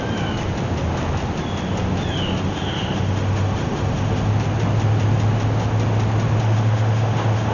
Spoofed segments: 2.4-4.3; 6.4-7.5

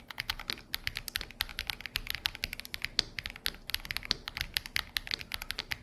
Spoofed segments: none